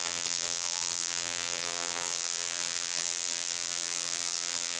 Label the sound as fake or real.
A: fake